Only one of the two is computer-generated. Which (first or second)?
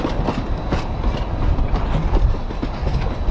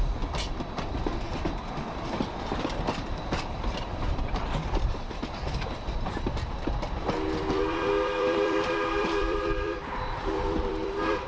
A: second